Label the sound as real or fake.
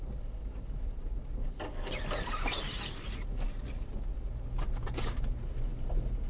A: real